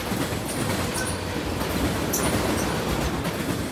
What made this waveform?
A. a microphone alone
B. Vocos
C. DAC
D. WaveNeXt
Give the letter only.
A